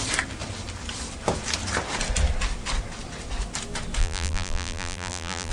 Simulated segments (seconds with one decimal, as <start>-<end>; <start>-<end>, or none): 4.0-5.5